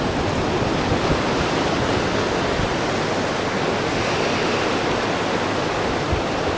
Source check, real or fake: real